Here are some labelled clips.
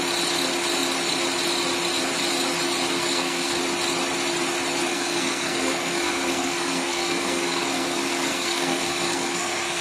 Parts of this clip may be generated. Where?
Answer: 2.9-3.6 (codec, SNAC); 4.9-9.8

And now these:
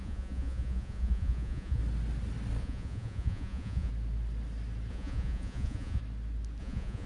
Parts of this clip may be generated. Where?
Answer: 0.0-1.8 (vocoder, Vocos); 2.6-3.9; 4.9-6.0; 6.6-7.1